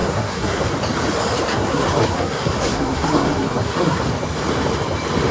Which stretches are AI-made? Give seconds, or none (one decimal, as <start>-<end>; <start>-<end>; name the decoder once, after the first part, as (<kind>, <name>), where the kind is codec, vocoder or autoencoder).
0.0-0.7 (codec, SNAC); 1.5-4.0